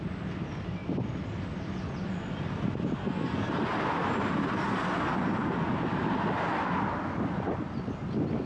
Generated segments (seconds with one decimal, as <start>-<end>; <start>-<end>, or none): 3.0-3.5

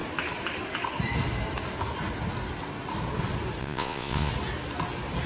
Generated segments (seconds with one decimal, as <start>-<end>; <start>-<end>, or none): 3.6-4.3

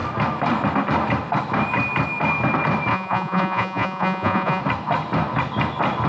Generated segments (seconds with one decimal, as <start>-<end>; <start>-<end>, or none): 2.9-4.6

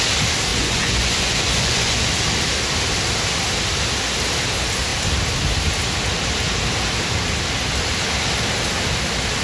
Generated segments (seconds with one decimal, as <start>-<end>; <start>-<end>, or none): 0.5-2.0

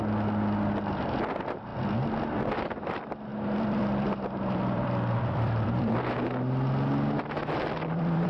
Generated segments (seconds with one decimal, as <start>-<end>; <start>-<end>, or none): 3.3-5.9; 7.4-8.3

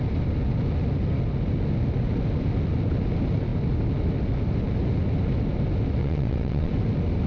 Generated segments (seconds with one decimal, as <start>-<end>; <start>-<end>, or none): 6.0-6.7